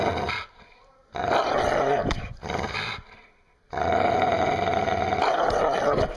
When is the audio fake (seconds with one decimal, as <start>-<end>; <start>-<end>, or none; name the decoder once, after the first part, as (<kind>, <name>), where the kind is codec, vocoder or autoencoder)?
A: none